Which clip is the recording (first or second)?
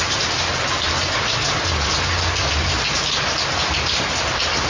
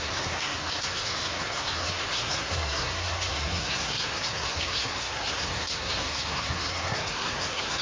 first